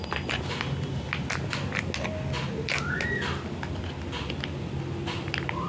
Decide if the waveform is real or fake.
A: real